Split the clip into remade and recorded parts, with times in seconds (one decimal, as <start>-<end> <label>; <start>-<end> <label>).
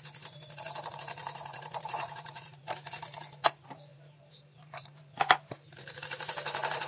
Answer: 0.0-1.2 recorded; 1.2-2.6 remade; 2.6-3.9 recorded; 3.9-5.9 remade; 5.9-6.9 recorded